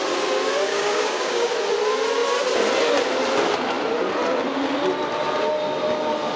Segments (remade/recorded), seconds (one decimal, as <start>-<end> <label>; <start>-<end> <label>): 0.0-0.7 recorded; 0.7-1.5 remade; 1.5-6.4 recorded